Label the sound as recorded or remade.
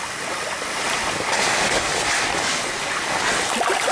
recorded